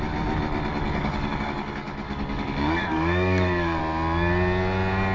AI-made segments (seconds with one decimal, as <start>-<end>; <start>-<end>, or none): 0.7-3.8